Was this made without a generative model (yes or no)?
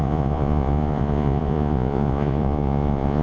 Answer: no